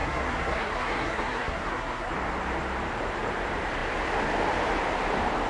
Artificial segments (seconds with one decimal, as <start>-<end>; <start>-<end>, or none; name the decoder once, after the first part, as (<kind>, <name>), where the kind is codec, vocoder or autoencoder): 0.0-2.1 (codec, SNAC)